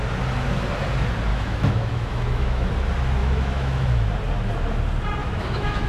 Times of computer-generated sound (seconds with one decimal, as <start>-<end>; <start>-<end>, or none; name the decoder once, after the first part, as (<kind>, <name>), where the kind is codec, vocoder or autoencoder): 1.3-2.7 (autoencoder, DAC-VAE); 3.2-4.0; 5.2-5.9